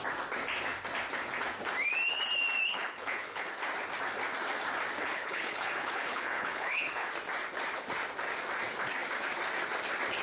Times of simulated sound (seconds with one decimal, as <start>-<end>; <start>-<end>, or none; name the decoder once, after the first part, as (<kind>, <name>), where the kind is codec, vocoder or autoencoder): 2.7-3.5 (codec, HILCodec); 5.0-7.1